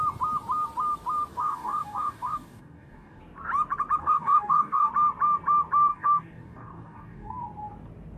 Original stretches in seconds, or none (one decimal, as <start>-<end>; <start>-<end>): 0.0-1.3; 3.2-4.0; 4.9-5.9; 7.4-8.2